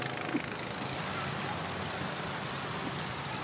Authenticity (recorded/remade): recorded